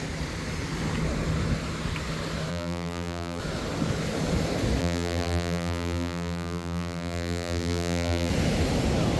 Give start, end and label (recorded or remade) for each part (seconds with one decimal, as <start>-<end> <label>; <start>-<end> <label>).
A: 0.0-2.5 recorded; 2.5-3.4 remade; 3.4-4.8 recorded; 4.8-8.3 remade; 8.3-9.2 recorded